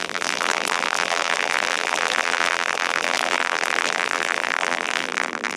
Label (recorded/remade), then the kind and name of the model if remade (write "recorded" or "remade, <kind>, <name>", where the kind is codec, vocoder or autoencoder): remade, vocoder, BigVGAN v2